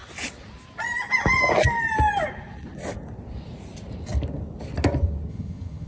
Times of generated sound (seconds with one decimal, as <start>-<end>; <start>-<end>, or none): 5.3-5.9